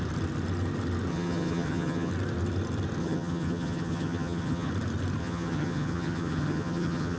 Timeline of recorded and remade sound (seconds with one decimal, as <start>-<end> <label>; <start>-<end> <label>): 0.0-1.1 recorded; 1.1-2.1 remade; 2.1-3.0 recorded; 3.0-4.7 remade; 4.7-5.2 recorded; 5.2-7.2 remade